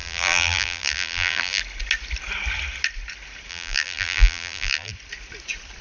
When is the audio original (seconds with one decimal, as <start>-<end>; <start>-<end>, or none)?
1.6-3.5; 4.9-5.8